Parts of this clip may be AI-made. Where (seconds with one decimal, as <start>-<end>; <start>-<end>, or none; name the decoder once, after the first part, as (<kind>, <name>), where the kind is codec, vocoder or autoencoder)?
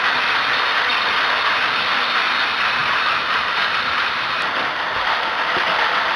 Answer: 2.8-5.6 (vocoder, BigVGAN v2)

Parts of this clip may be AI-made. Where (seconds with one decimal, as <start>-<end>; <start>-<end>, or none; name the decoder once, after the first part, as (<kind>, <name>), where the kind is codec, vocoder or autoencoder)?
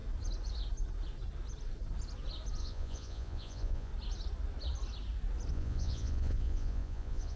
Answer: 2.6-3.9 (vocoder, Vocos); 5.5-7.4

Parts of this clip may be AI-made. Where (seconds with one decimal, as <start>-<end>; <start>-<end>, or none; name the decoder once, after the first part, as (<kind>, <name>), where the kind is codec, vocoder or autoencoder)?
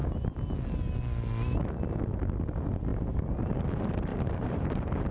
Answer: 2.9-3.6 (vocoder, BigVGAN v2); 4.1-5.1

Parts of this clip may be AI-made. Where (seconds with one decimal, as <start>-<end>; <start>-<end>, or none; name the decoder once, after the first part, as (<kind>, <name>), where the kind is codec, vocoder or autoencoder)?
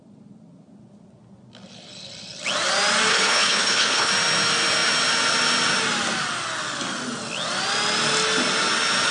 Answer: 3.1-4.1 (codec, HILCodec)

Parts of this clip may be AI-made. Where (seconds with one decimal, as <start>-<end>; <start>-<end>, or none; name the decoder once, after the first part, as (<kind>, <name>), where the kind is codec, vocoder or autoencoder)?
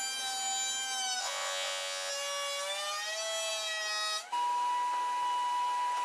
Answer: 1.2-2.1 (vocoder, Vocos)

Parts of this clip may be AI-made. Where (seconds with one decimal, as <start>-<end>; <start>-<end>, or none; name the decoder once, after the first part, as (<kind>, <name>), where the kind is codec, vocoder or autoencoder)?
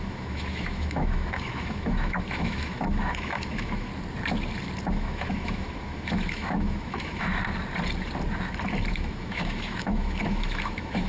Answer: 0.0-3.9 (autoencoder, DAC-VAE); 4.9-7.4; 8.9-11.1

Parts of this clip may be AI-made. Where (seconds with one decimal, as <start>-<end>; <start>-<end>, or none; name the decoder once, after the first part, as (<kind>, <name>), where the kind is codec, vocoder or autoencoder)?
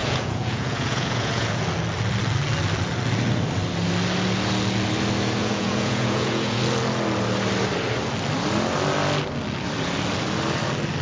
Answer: 0.0-1.6 (vocoder, Vocos); 5.4-6.6